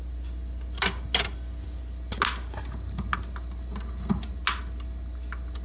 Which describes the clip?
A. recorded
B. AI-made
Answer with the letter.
A